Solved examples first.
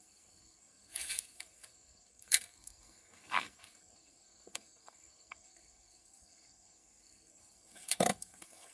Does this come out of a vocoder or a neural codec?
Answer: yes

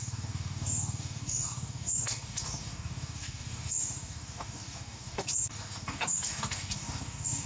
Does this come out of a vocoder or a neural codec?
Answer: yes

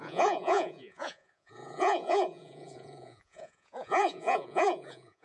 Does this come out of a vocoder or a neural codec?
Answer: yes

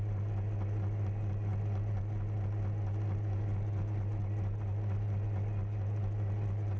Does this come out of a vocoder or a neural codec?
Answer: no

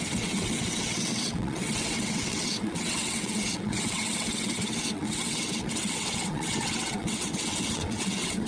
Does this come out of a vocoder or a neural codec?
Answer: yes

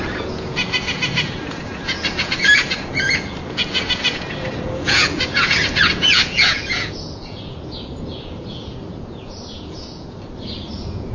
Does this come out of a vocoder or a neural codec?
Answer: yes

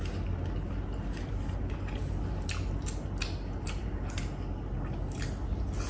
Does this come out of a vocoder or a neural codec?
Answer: no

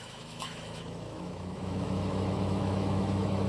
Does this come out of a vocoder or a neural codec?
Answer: yes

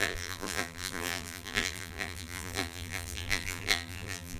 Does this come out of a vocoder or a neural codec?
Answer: yes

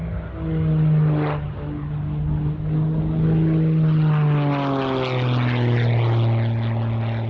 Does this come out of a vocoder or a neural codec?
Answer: no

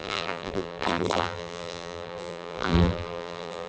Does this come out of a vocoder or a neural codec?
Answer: yes